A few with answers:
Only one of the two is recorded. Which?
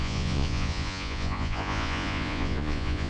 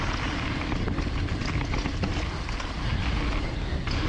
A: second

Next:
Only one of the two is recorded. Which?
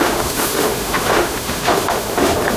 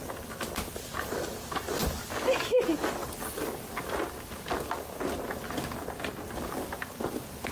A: second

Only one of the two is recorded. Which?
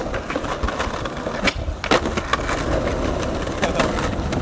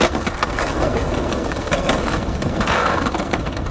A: first